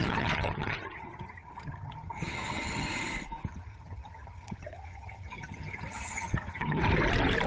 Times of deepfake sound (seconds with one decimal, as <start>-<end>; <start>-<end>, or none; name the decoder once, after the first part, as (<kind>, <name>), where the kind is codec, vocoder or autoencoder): 0.0-2.9 (vocoder, HiFi-GAN); 3.5-6.8